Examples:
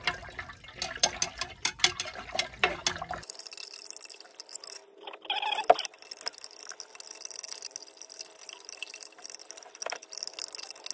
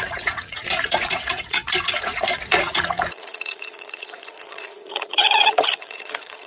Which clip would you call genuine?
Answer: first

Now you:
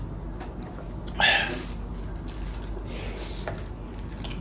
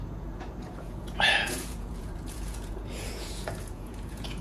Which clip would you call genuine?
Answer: first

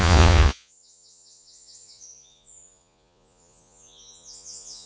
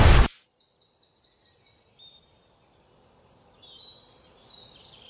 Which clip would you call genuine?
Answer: second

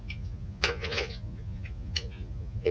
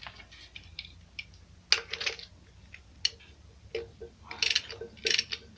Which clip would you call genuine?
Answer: second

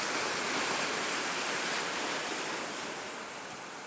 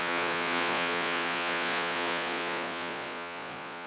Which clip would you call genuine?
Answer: first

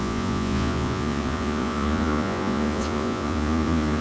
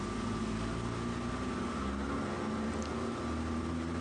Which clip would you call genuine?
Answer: second